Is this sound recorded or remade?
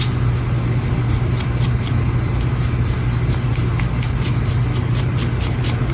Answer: recorded